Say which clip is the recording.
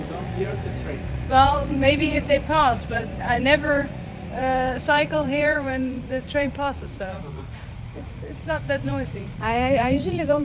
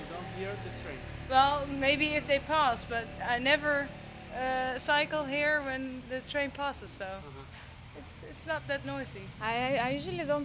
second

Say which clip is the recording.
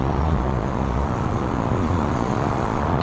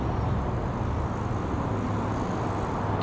second